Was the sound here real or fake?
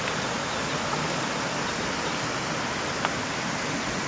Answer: real